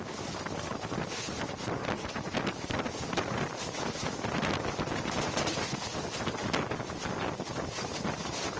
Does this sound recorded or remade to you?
recorded